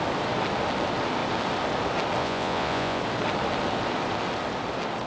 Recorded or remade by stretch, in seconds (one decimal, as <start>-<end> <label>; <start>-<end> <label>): 0.0-2.2 recorded; 2.2-3.0 remade; 3.0-5.1 recorded